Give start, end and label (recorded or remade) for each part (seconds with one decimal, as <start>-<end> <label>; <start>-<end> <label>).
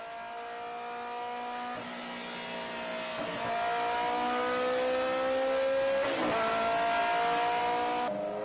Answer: 0.0-8.4 recorded